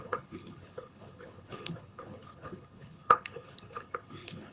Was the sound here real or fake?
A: fake